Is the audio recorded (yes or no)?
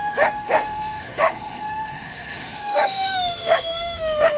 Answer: no